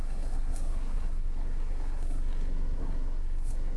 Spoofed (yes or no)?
yes